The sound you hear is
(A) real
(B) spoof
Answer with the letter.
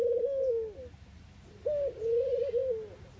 A